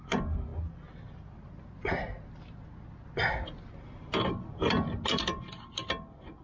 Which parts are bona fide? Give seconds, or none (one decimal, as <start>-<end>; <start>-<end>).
0.0-6.4